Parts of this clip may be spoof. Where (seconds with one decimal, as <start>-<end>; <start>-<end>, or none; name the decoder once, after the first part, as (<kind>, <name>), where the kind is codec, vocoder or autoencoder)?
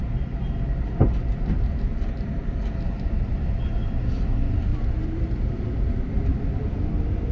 1.9-3.5 (vocoder, BigVGAN v2); 4.7-6.2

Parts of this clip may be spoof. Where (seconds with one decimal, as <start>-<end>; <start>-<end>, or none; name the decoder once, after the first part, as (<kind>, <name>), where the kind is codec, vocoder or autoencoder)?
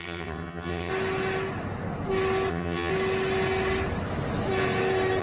0.0-0.9 (vocoder, HiFi-GAN); 2.5-2.9